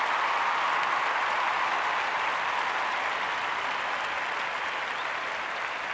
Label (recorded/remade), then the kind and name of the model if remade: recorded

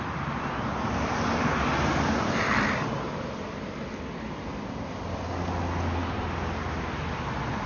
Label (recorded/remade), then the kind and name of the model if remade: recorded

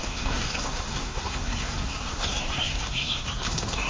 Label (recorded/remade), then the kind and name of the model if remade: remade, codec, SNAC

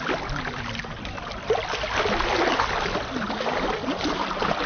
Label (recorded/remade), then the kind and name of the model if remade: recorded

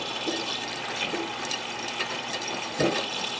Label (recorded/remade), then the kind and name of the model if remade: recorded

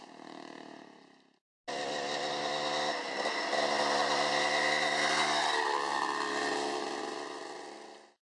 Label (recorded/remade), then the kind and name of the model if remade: recorded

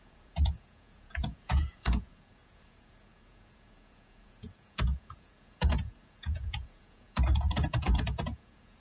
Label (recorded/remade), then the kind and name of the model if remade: remade, vocoder, Vocos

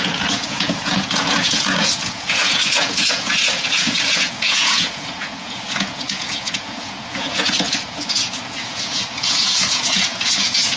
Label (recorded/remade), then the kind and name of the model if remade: remade, vocoder, Vocos